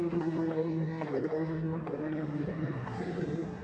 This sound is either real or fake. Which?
fake